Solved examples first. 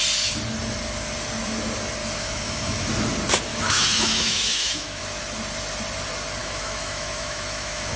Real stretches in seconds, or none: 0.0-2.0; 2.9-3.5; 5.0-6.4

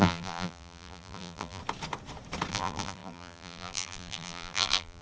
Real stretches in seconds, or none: 1.6-2.5

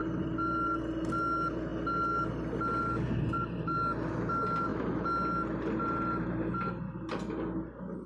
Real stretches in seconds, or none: 0.0-8.1

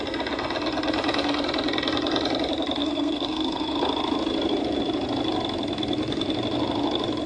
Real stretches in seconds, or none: 0.0-2.8; 3.8-7.3

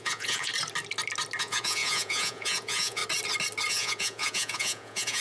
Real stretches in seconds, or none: 0.5-1.4; 3.0-3.7

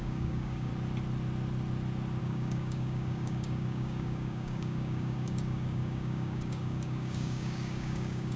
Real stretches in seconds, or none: 0.7-2.2

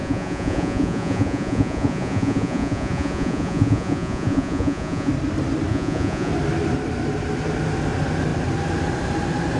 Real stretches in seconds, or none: 5.1-5.7; 6.3-9.6

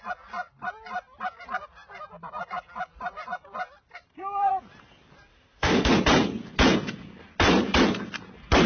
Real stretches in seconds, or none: 0.0-5.3; 5.9-8.7